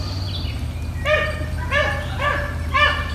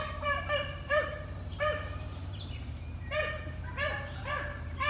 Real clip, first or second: first